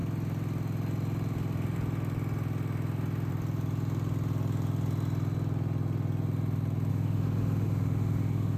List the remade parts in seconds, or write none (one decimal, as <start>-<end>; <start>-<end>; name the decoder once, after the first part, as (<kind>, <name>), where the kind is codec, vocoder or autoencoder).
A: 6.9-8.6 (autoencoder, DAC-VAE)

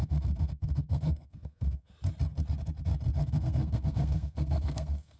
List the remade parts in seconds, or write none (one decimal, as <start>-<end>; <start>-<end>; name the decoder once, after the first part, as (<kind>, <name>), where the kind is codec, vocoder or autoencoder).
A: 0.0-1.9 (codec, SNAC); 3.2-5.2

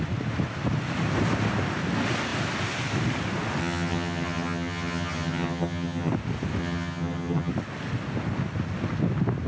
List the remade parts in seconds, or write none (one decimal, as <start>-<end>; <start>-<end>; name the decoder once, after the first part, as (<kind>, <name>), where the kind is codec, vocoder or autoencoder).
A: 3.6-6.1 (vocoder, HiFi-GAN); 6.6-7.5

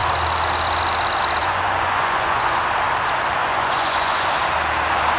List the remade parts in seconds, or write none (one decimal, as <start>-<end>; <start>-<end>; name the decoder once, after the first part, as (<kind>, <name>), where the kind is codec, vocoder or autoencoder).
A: 1.4-2.6 (vocoder, Vocos); 3.4-4.3

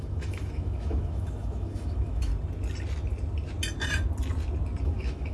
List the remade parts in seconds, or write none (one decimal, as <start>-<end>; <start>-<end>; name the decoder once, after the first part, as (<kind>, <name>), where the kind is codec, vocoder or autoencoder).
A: 0.0-2.3 (autoencoder, DAC-VAE); 4.8-5.3

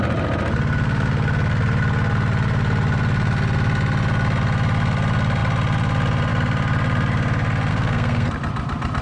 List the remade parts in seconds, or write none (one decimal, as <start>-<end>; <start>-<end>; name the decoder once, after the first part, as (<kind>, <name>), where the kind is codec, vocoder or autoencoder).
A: 7.7-8.3 (codec, SNAC)

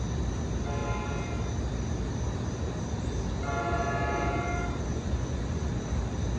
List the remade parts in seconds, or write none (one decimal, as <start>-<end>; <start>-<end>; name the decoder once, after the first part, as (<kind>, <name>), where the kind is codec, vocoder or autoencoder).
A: 4.9-5.8 (vocoder, Vocos)

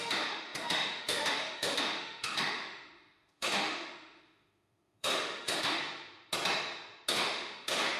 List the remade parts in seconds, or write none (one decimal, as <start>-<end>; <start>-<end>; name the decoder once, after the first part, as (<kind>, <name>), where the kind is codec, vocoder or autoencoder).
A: 0.0-5.8 (autoencoder, DAC-VAE); 7.1-8.0